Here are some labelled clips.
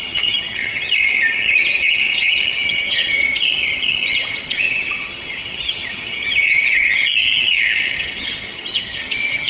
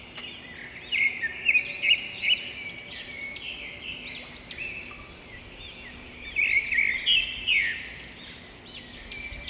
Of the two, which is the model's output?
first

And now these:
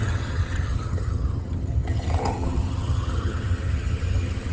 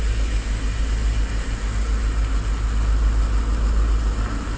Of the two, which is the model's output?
first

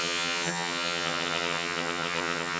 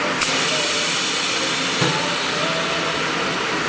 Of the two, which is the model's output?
first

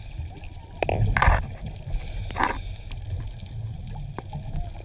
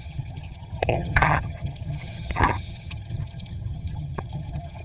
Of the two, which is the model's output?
second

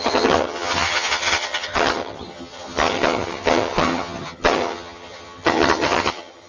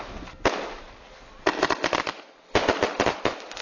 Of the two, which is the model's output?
first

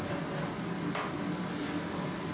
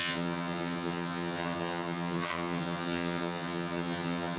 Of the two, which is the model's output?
second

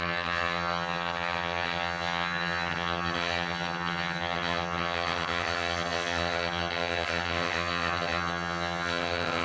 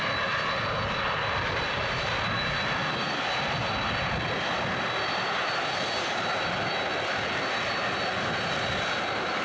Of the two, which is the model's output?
first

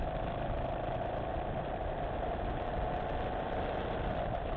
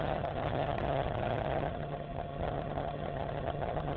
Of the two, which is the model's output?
second